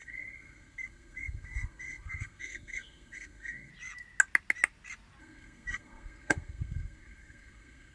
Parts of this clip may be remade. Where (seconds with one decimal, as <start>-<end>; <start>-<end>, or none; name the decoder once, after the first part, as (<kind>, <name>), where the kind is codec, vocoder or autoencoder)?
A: 0.0-3.7 (codec, SNAC); 5.2-7.9